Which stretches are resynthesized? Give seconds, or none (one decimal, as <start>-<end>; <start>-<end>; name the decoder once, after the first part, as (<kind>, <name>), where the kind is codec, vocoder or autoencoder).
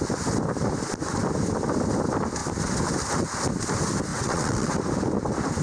4.1-4.7 (vocoder, WaveNeXt)